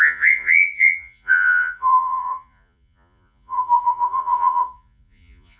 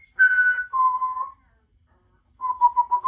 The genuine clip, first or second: second